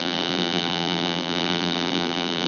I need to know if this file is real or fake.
fake